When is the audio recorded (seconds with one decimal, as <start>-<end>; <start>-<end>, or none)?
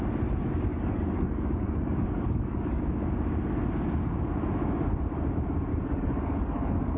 0.0-0.7; 2.8-5.7